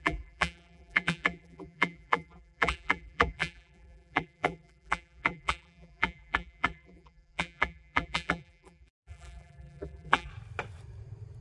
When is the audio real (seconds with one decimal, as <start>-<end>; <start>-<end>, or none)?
10.3-11.4